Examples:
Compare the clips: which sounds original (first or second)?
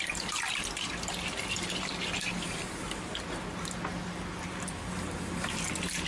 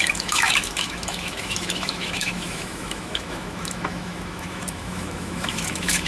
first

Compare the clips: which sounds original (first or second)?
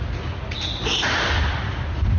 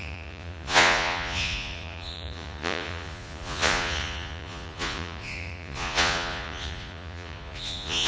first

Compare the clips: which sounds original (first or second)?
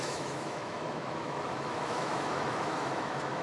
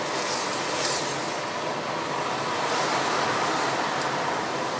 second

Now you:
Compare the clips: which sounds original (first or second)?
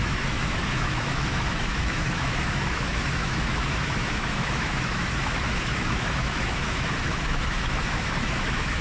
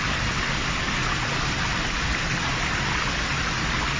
second